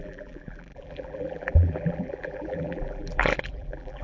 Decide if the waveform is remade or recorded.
remade